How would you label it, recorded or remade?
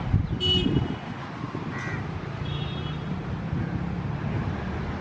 recorded